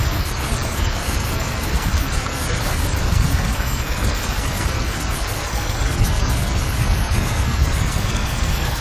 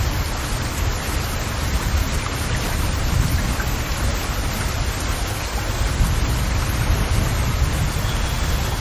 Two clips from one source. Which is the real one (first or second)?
second